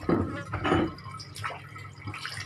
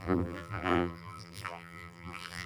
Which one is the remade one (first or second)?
second